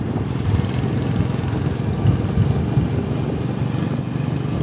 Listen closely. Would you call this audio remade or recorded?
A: recorded